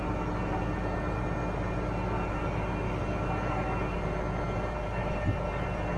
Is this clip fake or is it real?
real